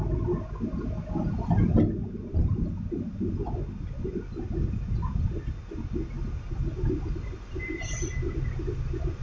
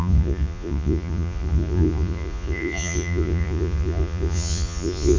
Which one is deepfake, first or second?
second